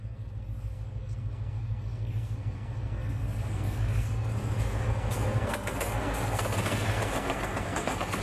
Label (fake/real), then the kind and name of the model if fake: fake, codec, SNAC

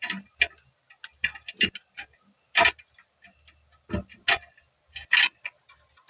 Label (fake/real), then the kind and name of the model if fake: real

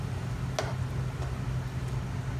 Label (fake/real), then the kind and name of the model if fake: real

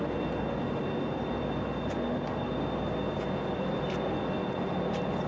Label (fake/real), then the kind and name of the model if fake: real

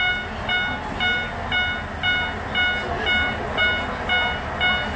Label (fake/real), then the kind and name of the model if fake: real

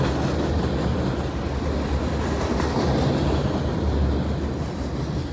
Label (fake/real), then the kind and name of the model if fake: real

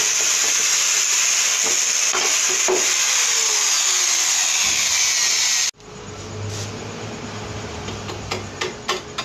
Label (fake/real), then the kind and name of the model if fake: real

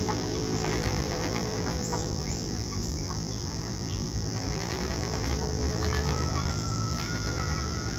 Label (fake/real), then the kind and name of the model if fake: fake, vocoder, BigVGAN v2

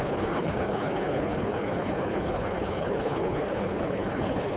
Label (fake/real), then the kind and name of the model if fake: fake, codec, HILCodec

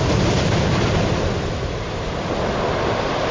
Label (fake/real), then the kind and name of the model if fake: real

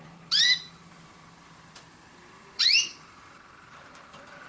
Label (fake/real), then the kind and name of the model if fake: fake, vocoder, BigVGAN v2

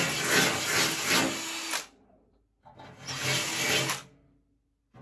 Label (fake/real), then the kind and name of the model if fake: real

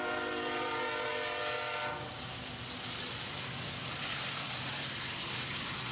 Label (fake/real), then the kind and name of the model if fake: real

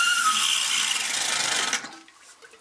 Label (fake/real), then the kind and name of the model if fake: real